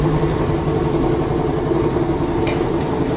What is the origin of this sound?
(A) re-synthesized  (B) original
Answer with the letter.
B